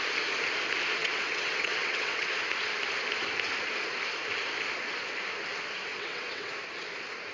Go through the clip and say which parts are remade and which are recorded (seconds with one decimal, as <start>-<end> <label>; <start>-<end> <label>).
0.0-1.0 recorded; 1.0-2.3 remade; 2.3-5.9 recorded; 5.9-6.5 remade; 6.5-7.3 recorded